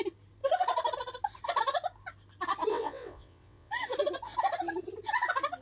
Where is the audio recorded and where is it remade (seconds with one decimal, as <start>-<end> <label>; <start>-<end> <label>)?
0.0-2.7 recorded; 2.7-3.7 remade; 3.7-5.6 recorded